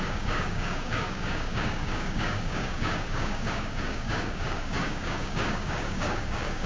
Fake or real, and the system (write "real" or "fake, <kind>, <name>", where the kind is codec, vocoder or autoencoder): fake, codec, DAC